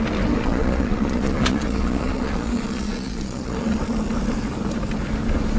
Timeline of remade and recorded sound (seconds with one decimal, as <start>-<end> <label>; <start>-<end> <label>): 0.0-0.4 recorded; 0.4-3.8 remade; 3.8-5.6 recorded